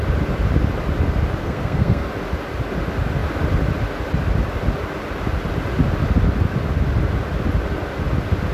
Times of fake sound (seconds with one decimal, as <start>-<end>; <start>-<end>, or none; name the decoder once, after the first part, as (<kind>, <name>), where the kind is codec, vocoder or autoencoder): 1.4-2.1 (codec, SNAC)